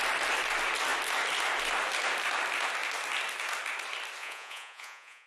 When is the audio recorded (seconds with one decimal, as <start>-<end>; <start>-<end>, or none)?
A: 0.0-4.2